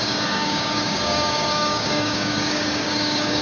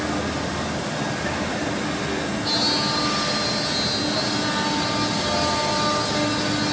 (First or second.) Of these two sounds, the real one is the second